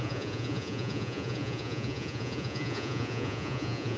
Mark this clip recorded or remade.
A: remade